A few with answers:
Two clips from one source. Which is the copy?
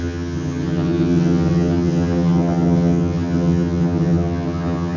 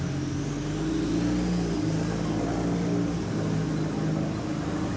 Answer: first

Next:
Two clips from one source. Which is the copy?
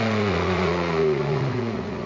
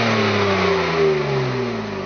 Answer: first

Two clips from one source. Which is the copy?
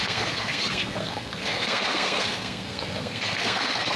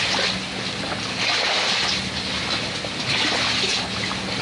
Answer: first